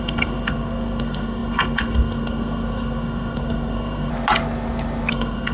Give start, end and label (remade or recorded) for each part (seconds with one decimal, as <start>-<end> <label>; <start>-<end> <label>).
0.0-4.1 remade; 4.1-5.1 recorded; 5.1-5.5 remade

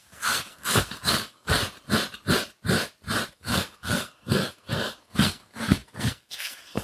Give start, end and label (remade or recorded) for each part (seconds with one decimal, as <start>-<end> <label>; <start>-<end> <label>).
0.0-1.6 remade; 1.6-3.3 recorded; 3.3-6.8 remade